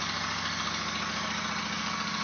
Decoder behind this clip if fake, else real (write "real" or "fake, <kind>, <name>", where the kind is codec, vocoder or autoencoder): real